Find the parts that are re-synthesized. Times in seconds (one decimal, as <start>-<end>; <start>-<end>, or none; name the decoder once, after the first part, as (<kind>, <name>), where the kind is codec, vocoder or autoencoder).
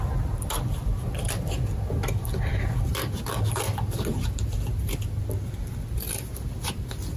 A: none